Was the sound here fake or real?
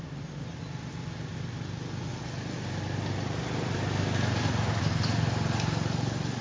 real